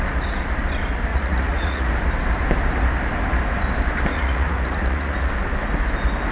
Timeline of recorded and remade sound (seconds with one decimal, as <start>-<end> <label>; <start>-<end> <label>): 0.0-1.1 recorded; 1.1-1.9 remade; 1.9-4.1 recorded; 4.1-5.3 remade; 5.3-6.3 recorded